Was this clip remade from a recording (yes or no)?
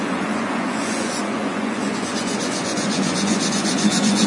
yes